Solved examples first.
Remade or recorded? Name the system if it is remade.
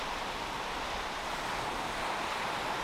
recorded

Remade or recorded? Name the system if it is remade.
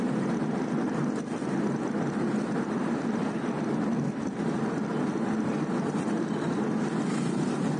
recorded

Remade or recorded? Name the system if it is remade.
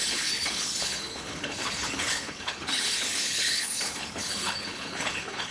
remade, codec, HILCodec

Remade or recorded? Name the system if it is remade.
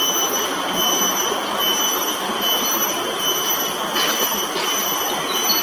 recorded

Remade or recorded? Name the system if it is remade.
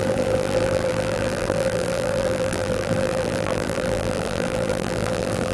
remade, vocoder, BigVGAN v2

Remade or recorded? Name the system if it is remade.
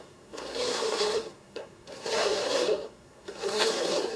remade, codec, SNAC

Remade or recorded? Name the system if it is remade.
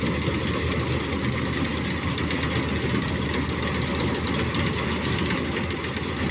recorded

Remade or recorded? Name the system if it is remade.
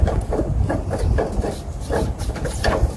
remade, vocoder, BigVGAN v2